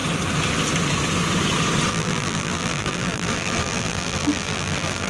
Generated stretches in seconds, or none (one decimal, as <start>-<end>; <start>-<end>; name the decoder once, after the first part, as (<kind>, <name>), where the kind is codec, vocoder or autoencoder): 1.9-5.1 (vocoder, BigVGAN v2)